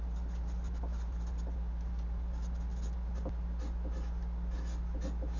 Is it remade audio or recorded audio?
recorded